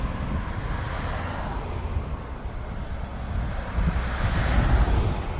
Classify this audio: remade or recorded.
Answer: recorded